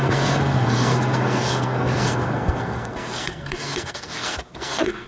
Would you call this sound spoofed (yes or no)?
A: yes